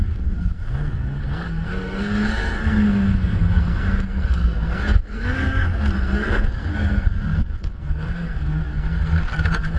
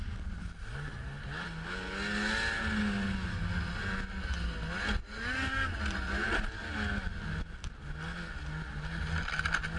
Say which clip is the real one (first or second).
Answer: second